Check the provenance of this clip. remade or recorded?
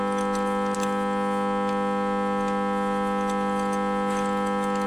recorded